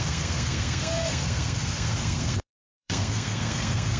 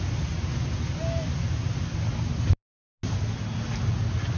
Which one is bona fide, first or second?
second